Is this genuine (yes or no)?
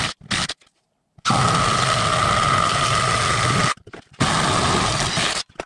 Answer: yes